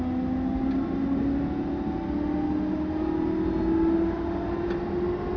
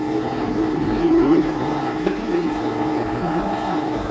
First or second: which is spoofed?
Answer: second